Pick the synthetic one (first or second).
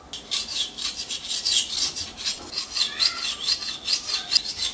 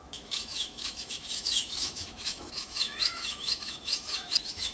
second